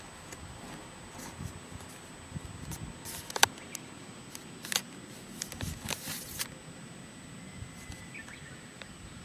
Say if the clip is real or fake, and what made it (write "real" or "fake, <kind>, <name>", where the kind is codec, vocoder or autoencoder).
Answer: real